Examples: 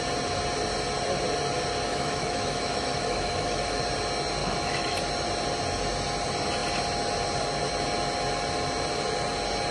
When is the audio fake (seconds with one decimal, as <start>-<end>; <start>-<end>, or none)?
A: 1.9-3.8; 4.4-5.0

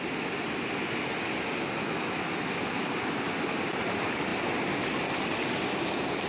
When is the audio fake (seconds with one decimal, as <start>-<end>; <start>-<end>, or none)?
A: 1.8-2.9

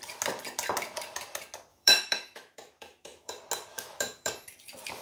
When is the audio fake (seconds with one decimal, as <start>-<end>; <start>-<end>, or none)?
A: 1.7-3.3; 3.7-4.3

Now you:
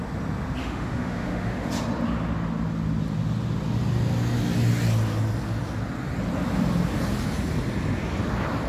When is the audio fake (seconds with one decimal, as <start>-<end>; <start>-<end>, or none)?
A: 0.6-1.7

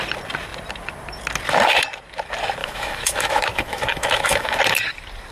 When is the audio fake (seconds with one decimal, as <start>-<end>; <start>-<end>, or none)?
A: 2.6-4.6

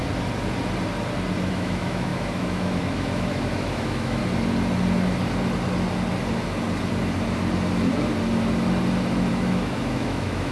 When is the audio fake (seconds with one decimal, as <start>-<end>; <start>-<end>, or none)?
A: 1.5-4.2; 9.3-10.5

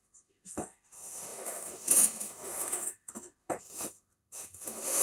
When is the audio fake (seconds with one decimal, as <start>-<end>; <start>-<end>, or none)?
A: 0.0-5.0